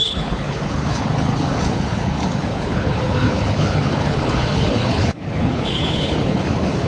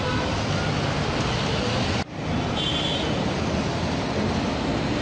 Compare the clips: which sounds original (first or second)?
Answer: second